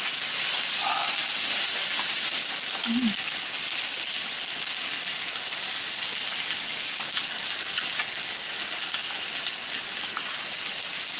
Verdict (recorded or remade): recorded